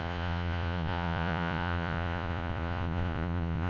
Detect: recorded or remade remade